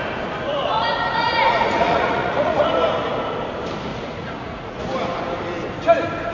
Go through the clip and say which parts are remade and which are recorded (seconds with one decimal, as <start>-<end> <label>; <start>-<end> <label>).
0.0-0.5 recorded; 0.5-2.7 remade; 2.7-3.9 recorded; 3.9-4.8 remade; 4.8-6.3 recorded